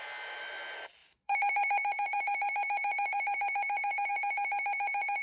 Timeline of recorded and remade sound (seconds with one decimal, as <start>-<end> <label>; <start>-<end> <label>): 0.0-1.0 recorded; 1.0-4.1 remade; 4.1-5.2 recorded